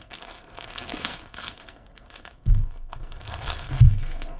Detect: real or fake fake